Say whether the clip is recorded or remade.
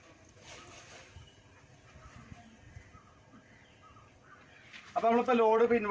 recorded